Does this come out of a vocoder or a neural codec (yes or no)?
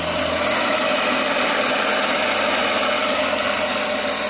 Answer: no